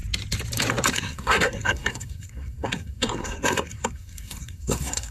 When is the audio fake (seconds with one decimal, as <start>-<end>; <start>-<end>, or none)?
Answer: 0.9-5.1

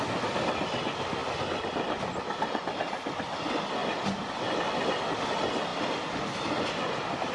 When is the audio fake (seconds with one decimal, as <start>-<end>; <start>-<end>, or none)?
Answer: none

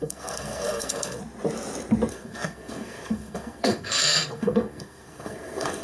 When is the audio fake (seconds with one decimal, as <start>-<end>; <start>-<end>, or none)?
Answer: 0.0-1.2; 2.1-5.8

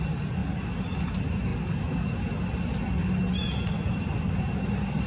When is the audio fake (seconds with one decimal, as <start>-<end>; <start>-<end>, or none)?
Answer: none

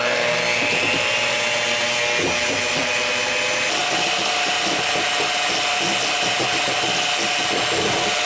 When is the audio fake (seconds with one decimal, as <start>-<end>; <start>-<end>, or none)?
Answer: none

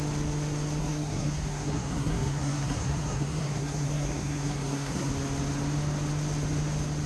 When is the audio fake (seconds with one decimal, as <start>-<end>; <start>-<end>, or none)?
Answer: 0.8-5.1

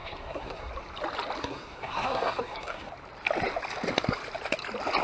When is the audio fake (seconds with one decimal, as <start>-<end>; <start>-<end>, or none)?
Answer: 0.0-0.7; 1.4-2.9